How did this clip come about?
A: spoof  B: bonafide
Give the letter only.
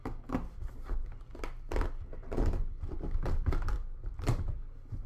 B